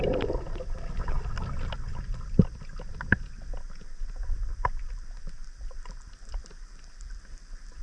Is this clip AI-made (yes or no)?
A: no